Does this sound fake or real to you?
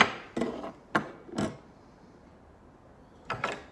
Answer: real